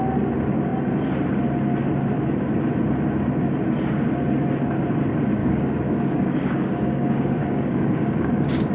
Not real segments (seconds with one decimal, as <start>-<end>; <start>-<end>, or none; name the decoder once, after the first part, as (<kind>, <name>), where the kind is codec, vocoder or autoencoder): 5.4-8.7 (codec, DAC)